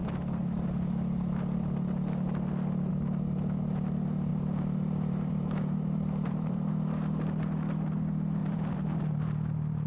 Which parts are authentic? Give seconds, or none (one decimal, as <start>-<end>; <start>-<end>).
0.0-4.3; 6.7-8.4; 9.0-9.9